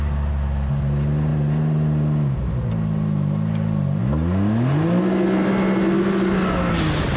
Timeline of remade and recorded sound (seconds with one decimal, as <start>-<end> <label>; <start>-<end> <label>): 0.0-7.2 recorded